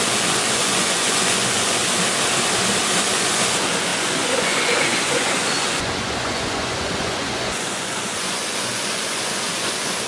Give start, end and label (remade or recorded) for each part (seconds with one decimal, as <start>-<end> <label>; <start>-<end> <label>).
0.0-1.8 remade; 1.8-3.0 recorded; 3.0-10.1 remade